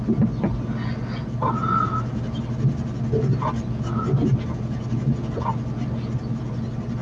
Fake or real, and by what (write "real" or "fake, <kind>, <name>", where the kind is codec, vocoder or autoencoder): real